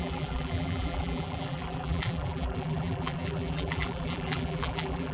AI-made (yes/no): yes